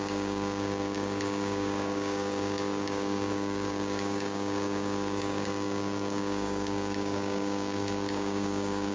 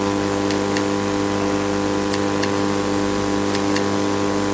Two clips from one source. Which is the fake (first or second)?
first